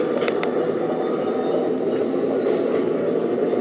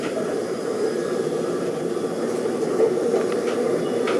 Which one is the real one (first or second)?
first